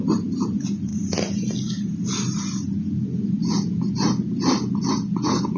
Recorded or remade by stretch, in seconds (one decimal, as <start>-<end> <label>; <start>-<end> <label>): 0.0-5.6 recorded

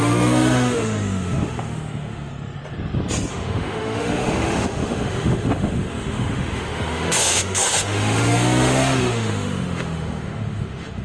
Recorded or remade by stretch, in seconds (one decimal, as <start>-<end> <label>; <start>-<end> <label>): 0.0-2.3 remade; 2.3-3.3 recorded; 3.3-11.0 remade

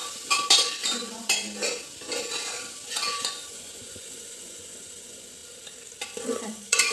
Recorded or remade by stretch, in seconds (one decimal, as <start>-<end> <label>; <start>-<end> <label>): 0.0-2.9 recorded; 2.9-5.4 remade; 5.4-6.2 recorded; 6.2-6.9 remade